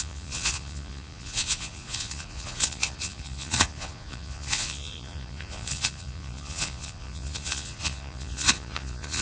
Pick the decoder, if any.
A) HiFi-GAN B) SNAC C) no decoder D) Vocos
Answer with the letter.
D